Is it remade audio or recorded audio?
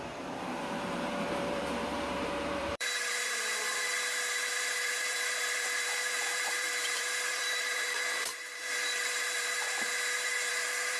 remade